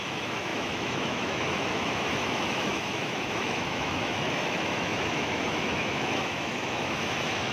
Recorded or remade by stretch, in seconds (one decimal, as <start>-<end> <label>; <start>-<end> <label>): 0.0-7.5 remade